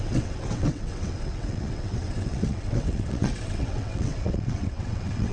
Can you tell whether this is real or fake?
fake